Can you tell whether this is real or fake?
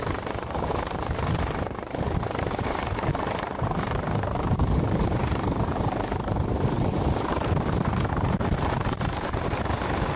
fake